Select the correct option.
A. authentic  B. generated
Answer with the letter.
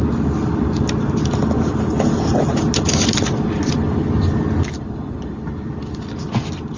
A